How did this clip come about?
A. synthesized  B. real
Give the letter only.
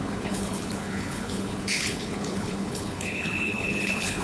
A